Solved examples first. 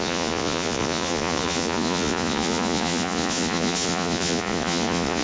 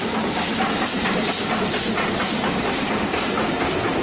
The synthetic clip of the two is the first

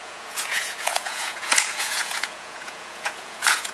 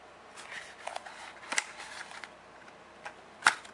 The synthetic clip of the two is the first